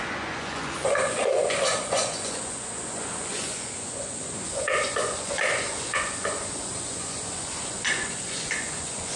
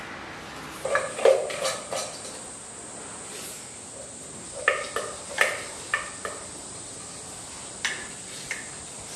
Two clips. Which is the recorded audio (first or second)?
second